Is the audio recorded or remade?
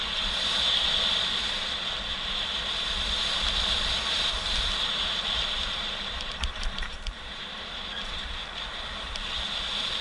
remade